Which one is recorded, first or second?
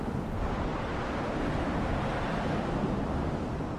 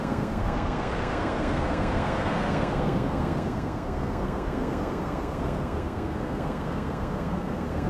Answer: first